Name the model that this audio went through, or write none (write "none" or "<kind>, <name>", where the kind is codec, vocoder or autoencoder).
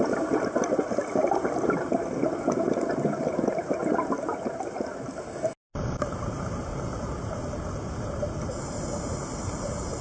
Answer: none